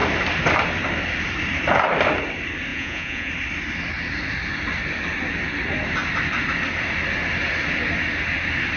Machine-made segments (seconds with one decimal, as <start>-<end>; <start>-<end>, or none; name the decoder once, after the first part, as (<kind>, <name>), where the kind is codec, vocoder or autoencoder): 2.7-3.3 (vocoder, Vocos)